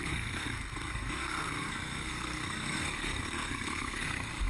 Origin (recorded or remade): remade